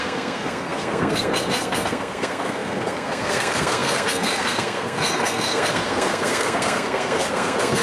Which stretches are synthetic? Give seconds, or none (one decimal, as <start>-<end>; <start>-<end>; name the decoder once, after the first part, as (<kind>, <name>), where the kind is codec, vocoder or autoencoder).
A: 0.0-7.8 (codec, SNAC)